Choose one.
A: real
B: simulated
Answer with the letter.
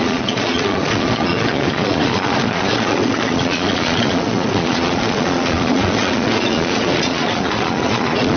B